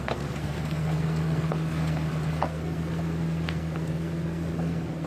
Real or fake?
fake